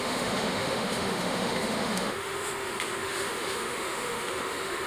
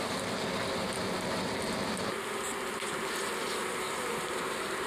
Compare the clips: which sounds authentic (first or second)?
second